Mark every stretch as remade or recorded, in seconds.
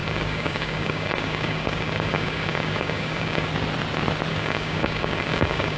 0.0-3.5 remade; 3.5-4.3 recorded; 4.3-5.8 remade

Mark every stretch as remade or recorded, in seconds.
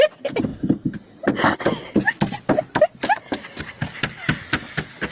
0.0-5.1 recorded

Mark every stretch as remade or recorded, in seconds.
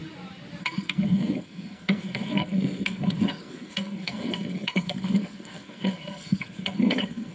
0.0-0.6 recorded; 0.6-7.3 remade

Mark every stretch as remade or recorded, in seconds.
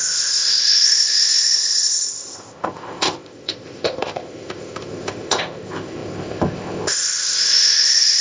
0.0-8.2 remade